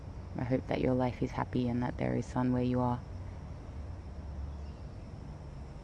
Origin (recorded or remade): recorded